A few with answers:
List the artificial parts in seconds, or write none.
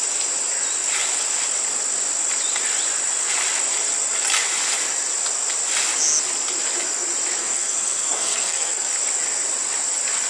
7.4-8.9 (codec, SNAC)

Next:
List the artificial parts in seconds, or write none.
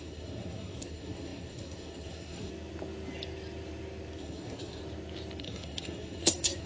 0.0-2.5 (codec, SNAC); 4.2-4.8; 5.4-6.7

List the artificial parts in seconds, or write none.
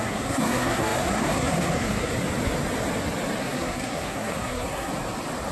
0.0-2.1 (codec, SNAC); 3.4-4.9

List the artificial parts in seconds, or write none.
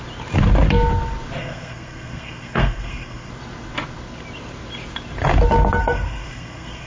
1.4-3.3 (codec, SNAC); 5.8-6.9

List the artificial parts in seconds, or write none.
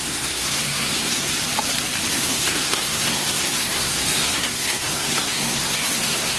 0.0-1.4 (codec, SNAC); 2.1-6.4